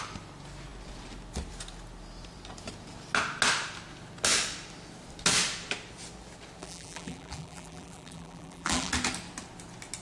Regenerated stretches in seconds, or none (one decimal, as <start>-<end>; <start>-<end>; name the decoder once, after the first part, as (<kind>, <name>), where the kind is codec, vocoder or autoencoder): 6.6-8.9 (vocoder, BigVGAN v2)